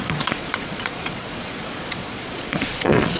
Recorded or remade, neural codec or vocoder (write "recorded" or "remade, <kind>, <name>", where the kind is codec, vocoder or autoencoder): remade, vocoder, Vocos